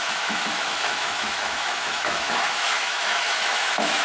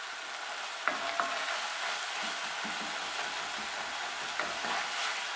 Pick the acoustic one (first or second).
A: second